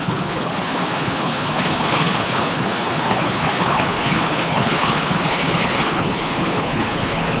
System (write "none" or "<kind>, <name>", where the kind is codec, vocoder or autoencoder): codec, HILCodec